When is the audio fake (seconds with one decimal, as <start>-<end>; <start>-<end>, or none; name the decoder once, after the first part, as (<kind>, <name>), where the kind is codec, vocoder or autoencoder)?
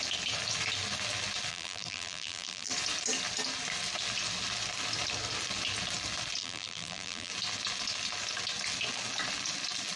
1.5-2.7 (vocoder, BigVGAN v2); 6.4-7.3